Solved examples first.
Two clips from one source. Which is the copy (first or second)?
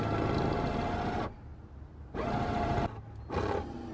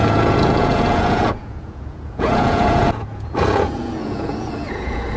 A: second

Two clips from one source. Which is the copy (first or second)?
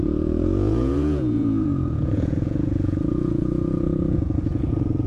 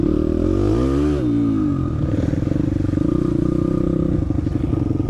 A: first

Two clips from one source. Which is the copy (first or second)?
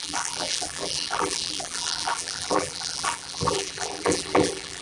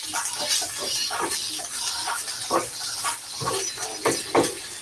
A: first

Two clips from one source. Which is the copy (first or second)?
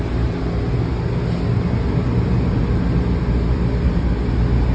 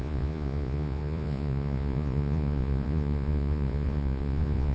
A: second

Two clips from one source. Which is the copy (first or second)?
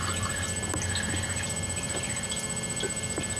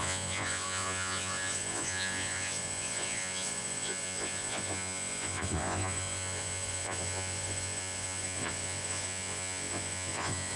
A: second